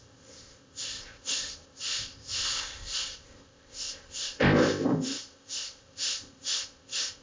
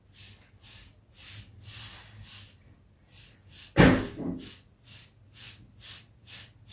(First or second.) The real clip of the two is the second